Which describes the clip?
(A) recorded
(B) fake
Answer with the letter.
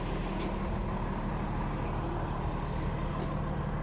A